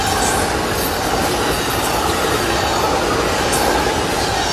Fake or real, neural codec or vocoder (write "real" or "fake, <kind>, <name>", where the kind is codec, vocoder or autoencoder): real